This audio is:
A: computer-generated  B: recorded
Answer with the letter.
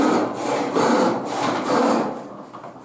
B